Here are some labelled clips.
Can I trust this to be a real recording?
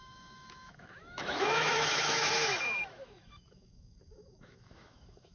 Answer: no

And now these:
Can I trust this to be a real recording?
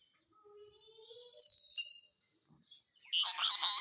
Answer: yes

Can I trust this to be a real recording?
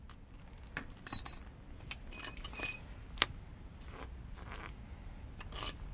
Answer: yes